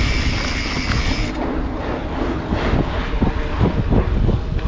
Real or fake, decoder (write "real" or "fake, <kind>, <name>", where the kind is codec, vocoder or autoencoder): real